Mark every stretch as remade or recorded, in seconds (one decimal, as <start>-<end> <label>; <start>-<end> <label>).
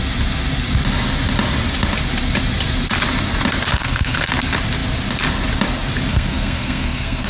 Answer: 0.0-3.7 recorded; 3.7-4.3 remade; 4.3-6.1 recorded; 6.1-7.3 remade